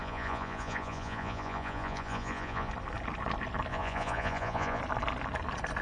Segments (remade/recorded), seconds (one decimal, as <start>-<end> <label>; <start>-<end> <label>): 0.0-2.7 remade; 2.7-3.7 recorded; 3.7-4.8 remade; 4.8-5.8 recorded